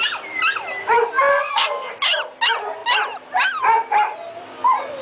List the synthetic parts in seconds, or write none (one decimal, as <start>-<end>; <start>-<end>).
1.3-1.9